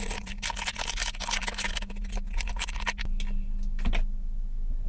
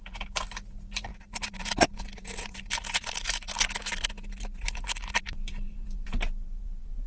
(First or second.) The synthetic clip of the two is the second